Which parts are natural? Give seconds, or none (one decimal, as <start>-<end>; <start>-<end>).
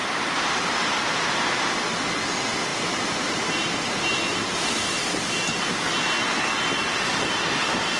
1.0-2.7; 5.5-7.1